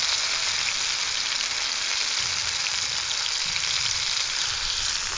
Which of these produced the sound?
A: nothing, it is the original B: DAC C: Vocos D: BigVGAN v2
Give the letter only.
A